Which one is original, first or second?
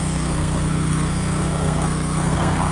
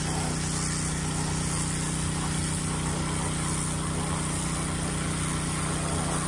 second